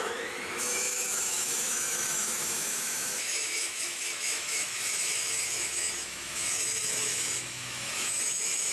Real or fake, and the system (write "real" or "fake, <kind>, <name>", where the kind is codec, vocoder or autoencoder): fake, autoencoder, DAC-VAE